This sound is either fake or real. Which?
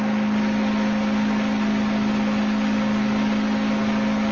real